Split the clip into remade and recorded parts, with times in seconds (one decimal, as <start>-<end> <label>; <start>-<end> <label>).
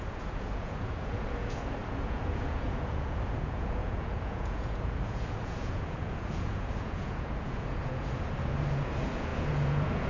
0.0-10.1 remade